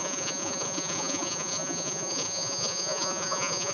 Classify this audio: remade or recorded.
remade